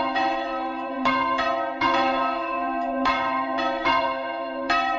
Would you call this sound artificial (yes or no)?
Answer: yes